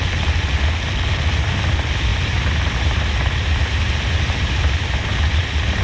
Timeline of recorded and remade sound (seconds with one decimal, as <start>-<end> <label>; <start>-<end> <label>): 0.0-2.1 recorded; 2.1-5.8 remade